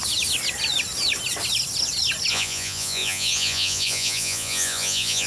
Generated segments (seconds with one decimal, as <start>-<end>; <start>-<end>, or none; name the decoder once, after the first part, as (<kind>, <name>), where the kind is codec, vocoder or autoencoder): 2.3-5.3 (vocoder, Vocos)